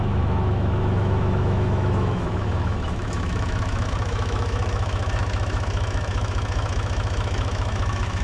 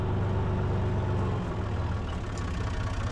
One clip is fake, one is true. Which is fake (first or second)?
first